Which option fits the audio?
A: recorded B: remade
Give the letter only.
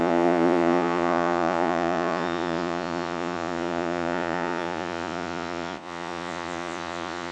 B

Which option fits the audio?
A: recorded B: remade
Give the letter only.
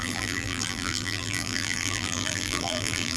B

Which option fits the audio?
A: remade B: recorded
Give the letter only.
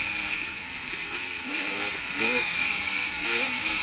A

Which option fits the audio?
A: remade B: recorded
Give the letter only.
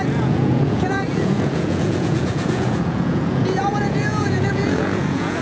A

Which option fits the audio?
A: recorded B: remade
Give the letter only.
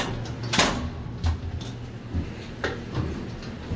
A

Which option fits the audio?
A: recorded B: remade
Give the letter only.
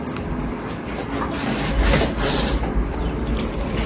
A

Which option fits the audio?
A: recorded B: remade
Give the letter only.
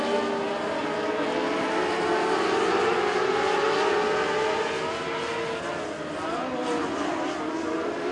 A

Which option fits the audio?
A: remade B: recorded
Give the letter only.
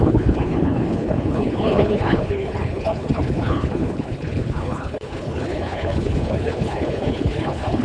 A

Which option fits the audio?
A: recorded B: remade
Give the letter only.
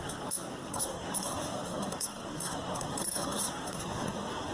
B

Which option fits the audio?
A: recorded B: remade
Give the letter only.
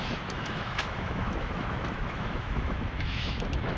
B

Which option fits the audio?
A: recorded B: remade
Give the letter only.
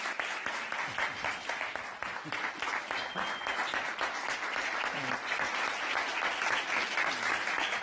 A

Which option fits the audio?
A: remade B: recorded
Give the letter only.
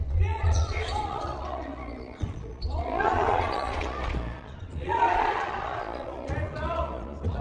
A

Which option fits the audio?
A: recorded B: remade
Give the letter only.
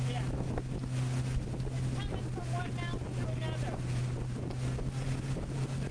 A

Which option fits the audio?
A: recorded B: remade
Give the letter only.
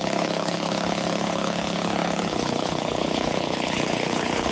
B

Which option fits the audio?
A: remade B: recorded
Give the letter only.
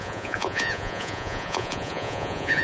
A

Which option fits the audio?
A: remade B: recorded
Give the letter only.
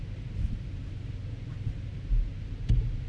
A